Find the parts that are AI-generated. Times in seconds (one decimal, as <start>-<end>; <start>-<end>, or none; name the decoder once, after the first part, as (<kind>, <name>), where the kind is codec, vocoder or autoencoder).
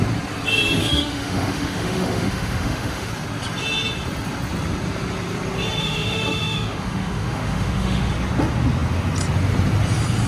0.8-3.1 (autoencoder, DAC-VAE); 5.8-8.1